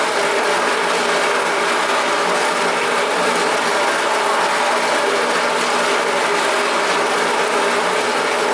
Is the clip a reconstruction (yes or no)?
no